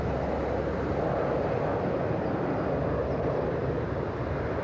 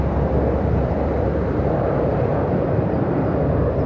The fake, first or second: second